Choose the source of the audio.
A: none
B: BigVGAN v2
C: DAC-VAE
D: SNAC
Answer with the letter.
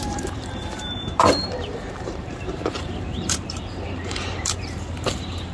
B